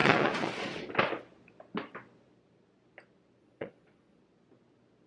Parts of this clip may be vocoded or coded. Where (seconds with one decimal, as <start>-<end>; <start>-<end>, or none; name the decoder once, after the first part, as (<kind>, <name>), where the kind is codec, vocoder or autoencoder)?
0.0-0.9 (vocoder, Vocos); 3.4-4.2